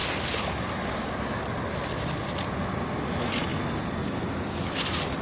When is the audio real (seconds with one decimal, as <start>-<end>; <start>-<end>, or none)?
0.0-5.2